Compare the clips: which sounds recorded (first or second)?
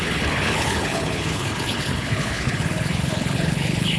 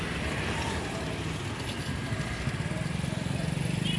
second